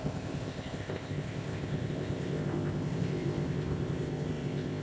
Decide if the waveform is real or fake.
fake